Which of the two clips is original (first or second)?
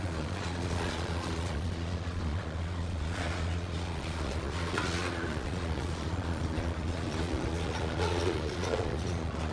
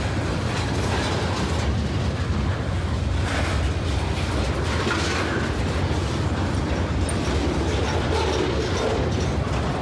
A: second